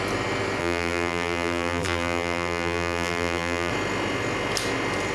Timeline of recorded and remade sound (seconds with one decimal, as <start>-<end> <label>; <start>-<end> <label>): 0.0-0.6 recorded; 0.6-3.7 remade; 3.7-5.1 recorded

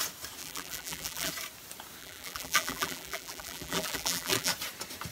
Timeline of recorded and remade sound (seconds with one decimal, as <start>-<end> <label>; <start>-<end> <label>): 0.0-0.4 recorded; 0.4-1.3 remade; 1.3-2.0 recorded; 2.0-4.5 remade; 4.5-5.1 recorded

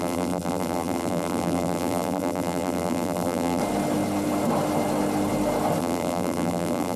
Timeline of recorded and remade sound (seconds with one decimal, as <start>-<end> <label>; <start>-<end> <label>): 0.0-3.6 remade; 3.6-5.8 recorded; 5.8-7.0 remade